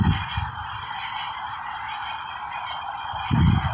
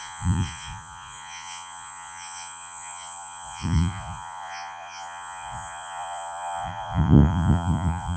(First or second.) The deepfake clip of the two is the second